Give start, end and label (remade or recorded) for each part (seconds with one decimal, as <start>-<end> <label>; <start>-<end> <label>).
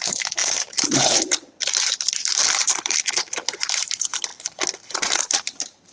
0.0-4.3 remade; 4.3-4.9 recorded; 4.9-5.9 remade